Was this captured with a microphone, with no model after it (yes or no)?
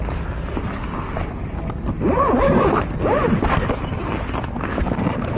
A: yes